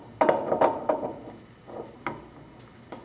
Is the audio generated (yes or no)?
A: no